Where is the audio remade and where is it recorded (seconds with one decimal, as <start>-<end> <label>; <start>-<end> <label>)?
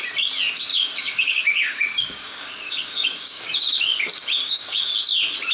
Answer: 0.0-0.7 recorded; 0.7-4.0 remade; 4.0-4.4 recorded; 4.4-4.9 remade; 4.9-5.5 recorded